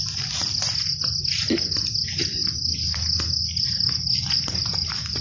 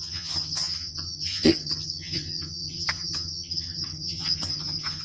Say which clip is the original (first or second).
first